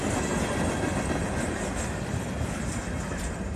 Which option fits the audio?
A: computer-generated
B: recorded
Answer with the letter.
B